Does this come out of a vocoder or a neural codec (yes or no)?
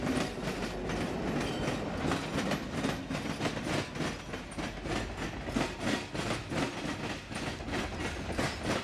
no